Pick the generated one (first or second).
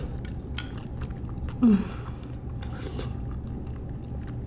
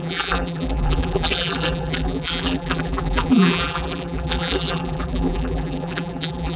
second